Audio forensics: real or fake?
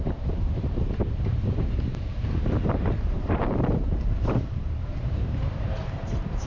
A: fake